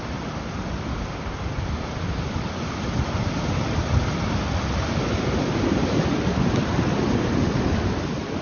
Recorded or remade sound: recorded